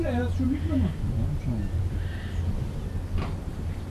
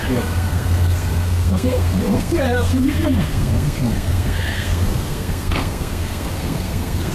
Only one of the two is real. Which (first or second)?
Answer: first